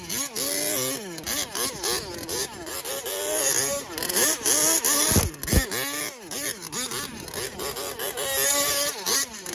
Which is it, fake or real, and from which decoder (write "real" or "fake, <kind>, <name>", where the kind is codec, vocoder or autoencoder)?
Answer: real